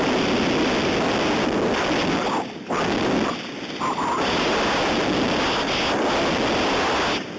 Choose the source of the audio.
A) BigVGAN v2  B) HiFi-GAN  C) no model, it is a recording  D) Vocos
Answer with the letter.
C